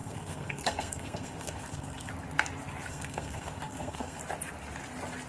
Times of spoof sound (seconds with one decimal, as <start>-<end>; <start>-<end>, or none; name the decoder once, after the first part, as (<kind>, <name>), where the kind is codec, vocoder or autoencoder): 0.0-2.1 (codec, SNAC); 2.9-4.2